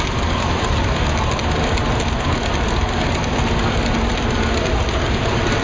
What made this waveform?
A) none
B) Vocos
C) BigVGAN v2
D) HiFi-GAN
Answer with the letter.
A